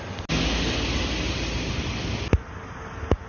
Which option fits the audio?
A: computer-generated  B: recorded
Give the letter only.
B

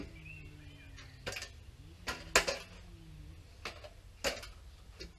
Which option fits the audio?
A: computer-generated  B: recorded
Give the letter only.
B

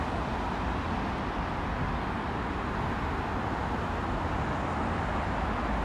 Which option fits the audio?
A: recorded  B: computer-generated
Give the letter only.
A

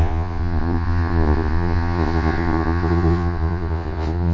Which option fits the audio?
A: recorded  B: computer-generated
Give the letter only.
B